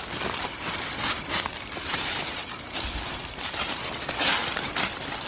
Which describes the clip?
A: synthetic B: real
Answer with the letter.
A